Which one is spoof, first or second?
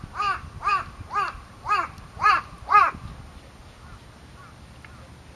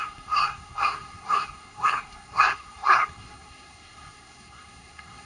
second